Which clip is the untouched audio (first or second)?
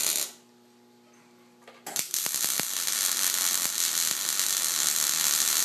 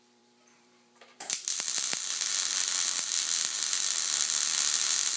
first